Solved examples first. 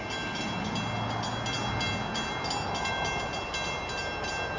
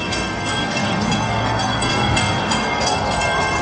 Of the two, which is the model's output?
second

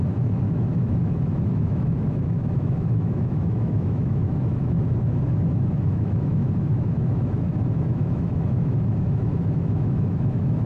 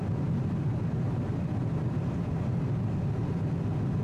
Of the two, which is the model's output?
first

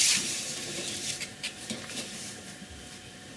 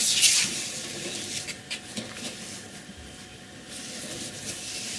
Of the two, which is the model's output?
first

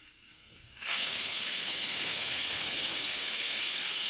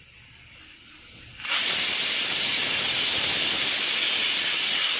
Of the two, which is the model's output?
first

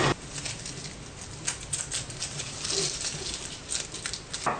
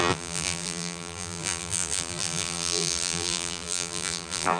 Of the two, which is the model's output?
second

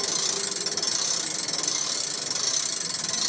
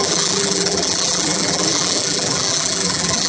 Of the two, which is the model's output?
second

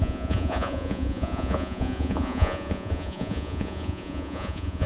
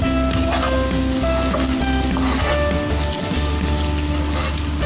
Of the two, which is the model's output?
first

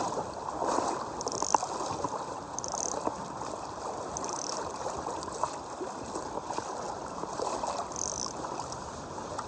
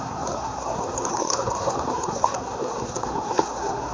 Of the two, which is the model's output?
second